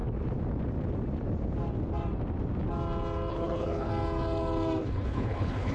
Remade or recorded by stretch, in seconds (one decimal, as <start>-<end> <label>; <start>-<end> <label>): 0.0-3.3 recorded; 3.3-3.9 remade; 3.9-4.8 recorded; 4.8-5.7 remade